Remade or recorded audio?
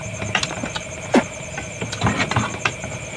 remade